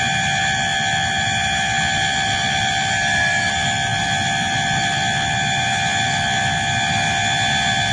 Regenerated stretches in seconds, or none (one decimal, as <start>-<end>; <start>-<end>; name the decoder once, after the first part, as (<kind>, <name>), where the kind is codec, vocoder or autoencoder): none